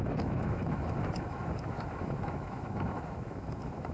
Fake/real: fake